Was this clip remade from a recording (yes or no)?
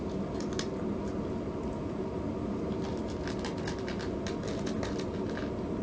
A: no